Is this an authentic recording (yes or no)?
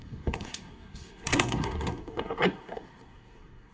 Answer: no